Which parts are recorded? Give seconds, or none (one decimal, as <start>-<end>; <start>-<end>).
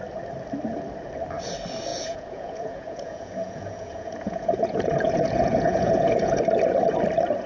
0.0-1.9; 6.4-7.5